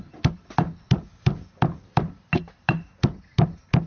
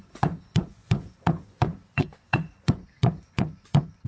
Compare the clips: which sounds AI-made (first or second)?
second